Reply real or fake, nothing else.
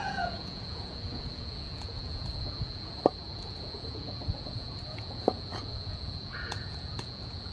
fake